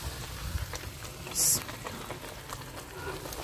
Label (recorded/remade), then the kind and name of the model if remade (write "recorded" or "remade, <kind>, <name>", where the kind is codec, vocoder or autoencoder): recorded